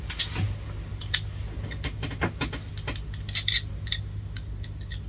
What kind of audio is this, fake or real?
real